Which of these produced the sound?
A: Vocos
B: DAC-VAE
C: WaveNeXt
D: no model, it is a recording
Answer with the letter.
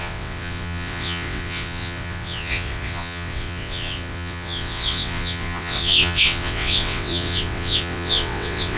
C